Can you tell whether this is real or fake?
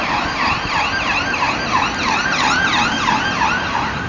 real